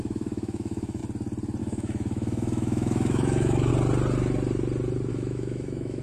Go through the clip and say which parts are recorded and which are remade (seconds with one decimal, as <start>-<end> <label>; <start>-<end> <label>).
0.0-1.0 remade; 1.0-1.6 recorded; 1.6-3.7 remade; 3.7-5.1 recorded; 5.1-6.0 remade